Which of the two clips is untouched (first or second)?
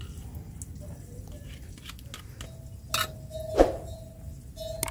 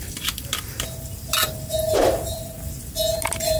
first